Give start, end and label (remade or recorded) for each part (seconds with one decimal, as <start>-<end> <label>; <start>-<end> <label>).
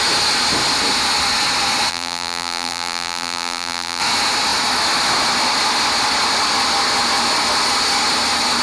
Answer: 0.0-1.9 recorded; 1.9-4.0 remade; 4.0-8.6 recorded